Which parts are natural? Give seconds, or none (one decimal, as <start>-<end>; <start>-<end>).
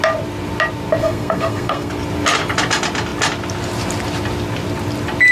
0.0-1.0; 1.9-5.3